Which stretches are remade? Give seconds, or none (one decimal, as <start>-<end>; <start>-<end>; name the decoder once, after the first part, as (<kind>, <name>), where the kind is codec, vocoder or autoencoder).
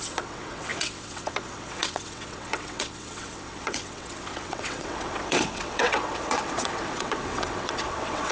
0.0-8.3 (vocoder, WaveNeXt)